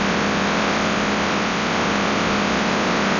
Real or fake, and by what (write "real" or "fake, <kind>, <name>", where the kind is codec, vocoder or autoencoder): real